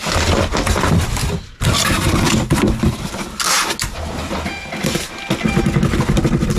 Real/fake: real